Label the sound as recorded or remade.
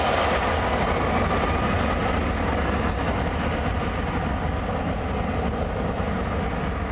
recorded